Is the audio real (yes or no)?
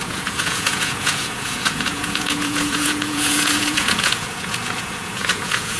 no